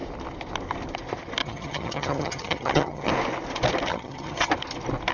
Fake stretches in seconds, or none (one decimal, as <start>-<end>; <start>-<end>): 1.4-3.1; 3.9-4.5